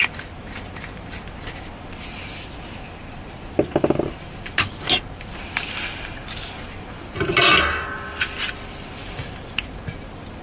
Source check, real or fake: real